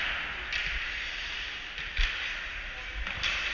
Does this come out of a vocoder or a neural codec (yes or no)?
no